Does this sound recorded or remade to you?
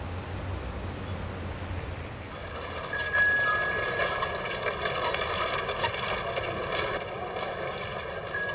recorded